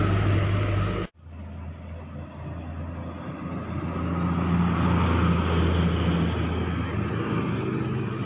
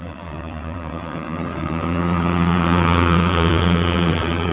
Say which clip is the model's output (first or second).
second